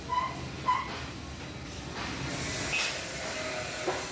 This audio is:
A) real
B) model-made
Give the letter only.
A